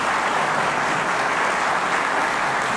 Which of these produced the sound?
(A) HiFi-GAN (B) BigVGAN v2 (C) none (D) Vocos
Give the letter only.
C